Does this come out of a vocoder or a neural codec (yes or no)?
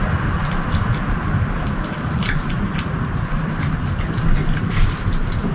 no